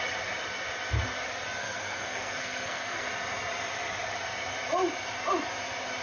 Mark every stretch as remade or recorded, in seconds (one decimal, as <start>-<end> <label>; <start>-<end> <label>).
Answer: 0.0-1.6 recorded; 1.6-3.1 remade; 3.1-6.0 recorded

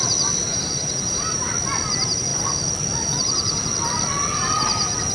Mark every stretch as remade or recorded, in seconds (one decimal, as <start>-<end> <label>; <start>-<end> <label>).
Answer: 0.0-0.4 recorded; 0.4-1.5 remade; 1.5-5.1 recorded

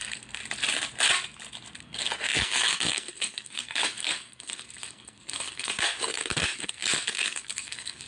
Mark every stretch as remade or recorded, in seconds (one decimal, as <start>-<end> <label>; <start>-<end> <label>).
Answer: 0.0-0.4 remade; 0.4-1.8 recorded; 1.8-8.1 remade

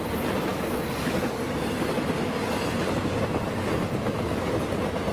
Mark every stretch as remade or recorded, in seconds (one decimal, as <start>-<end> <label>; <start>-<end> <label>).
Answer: 0.0-0.5 recorded; 0.5-1.4 remade; 1.4-5.1 recorded

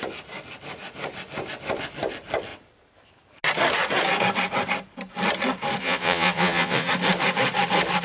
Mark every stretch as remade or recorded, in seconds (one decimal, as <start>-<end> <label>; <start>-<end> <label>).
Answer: 0.0-5.8 recorded; 5.8-6.9 remade; 6.9-8.0 recorded

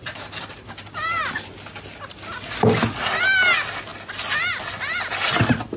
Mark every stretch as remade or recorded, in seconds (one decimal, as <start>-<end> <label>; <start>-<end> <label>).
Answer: 0.0-5.8 recorded